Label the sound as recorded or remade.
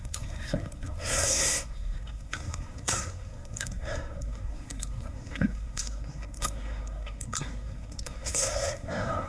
remade